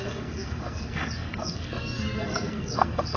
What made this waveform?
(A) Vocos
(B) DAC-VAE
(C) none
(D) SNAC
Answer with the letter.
D